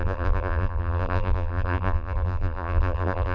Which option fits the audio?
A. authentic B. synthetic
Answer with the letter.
B